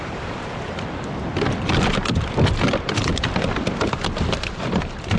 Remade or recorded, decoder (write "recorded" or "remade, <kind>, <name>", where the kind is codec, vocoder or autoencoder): remade, vocoder, BigVGAN v2